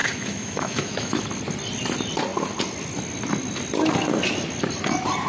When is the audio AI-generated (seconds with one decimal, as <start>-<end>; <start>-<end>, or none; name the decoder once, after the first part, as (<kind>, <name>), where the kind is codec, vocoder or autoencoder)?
0.0-1.2 (autoencoder, DAC-VAE)